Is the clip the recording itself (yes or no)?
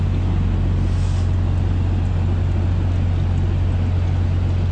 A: yes